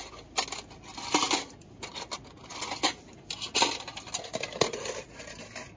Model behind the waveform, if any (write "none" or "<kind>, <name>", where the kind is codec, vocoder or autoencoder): none